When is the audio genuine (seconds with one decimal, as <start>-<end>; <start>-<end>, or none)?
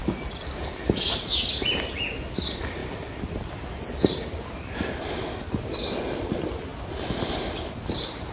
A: 0.0-8.3